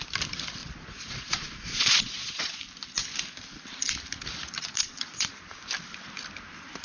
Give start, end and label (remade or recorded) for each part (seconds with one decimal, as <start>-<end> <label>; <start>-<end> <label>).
0.0-0.6 recorded; 0.6-2.6 remade; 2.6-4.6 recorded; 4.6-5.3 remade; 5.3-6.8 recorded